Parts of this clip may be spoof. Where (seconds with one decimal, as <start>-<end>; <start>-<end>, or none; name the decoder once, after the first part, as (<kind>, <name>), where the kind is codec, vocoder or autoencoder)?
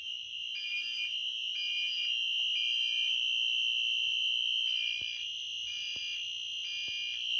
2.6-6.0 (vocoder, BigVGAN v2)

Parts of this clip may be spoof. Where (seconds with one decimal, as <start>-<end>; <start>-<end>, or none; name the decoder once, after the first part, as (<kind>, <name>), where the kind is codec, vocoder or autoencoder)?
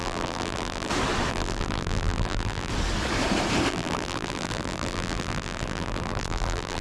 0.0-0.9 (vocoder, BigVGAN v2); 1.3-2.7; 3.7-6.8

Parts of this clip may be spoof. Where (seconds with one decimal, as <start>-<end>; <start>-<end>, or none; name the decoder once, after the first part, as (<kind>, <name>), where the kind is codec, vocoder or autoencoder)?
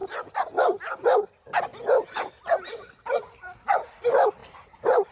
0.0-0.8 (vocoder, BigVGAN v2); 4.4-5.1